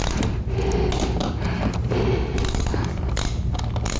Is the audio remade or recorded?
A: recorded